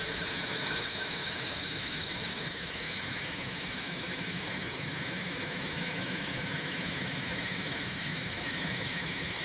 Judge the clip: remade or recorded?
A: remade